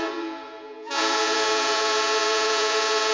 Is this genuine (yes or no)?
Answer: no